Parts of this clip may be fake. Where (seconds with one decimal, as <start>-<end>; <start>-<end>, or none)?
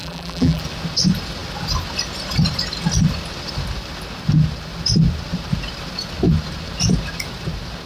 0.0-0.6